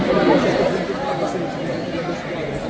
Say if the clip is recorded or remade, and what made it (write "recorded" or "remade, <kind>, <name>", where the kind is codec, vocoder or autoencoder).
recorded